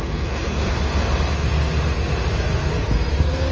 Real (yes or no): yes